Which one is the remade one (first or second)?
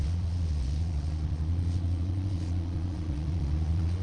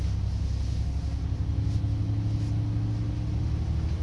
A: first